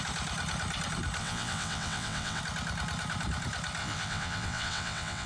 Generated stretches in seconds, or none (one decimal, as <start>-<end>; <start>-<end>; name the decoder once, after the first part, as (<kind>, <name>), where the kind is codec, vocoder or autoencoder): 1.2-2.4 (vocoder, WaveNeXt); 3.8-5.3